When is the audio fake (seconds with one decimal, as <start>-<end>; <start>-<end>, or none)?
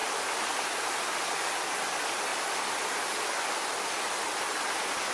none